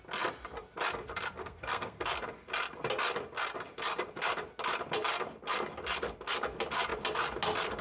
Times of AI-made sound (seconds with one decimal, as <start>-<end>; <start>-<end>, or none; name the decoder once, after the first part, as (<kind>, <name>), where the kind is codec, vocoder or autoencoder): 1.4-2.0 (codec, SNAC)